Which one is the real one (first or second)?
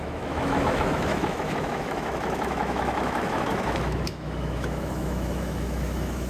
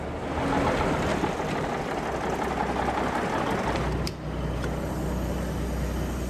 second